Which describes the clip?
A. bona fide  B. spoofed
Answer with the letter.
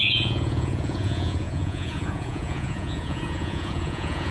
B